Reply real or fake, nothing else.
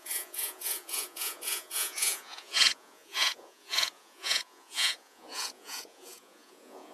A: fake